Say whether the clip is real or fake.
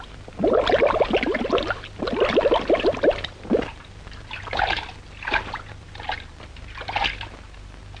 real